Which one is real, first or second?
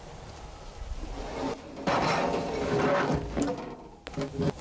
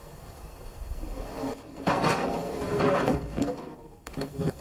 first